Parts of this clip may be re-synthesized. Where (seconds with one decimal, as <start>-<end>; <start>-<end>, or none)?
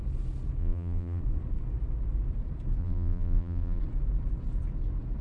0.6-1.2; 2.8-3.8